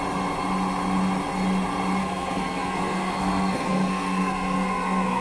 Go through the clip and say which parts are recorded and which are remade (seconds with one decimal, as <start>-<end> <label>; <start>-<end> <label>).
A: 0.0-2.0 recorded; 2.0-5.2 remade